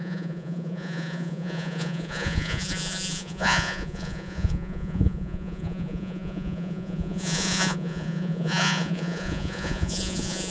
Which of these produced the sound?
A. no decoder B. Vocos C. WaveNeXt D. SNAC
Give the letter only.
B